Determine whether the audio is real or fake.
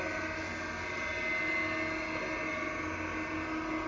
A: real